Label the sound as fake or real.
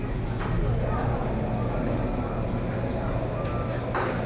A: real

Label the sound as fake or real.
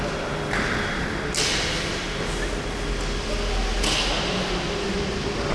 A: real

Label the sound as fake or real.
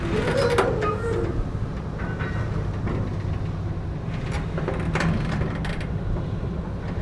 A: real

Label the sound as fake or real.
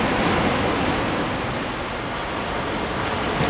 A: real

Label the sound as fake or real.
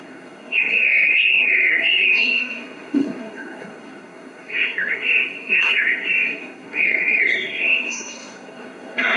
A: fake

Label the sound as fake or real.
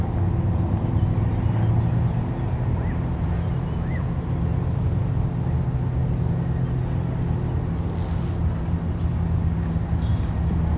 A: real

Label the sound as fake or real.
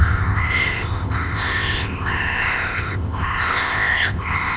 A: fake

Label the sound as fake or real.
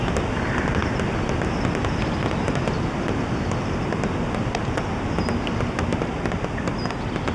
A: real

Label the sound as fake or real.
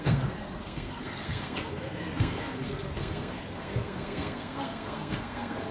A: fake